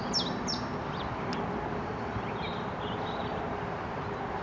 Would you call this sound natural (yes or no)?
yes